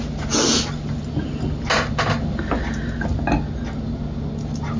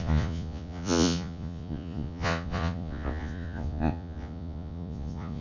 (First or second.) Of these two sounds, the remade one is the second